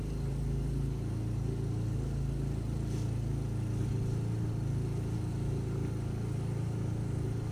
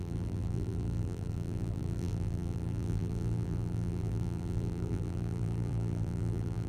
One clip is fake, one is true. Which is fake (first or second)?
second